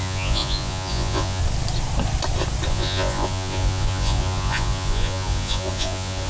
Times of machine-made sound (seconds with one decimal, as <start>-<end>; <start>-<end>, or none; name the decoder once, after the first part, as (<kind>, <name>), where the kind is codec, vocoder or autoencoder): 0.0-1.4 (vocoder, Vocos); 2.7-6.3